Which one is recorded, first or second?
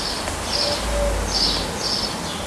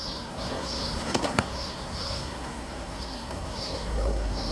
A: first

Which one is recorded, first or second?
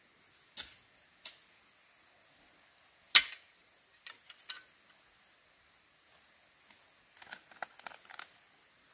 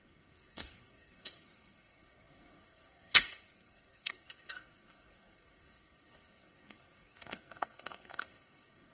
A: first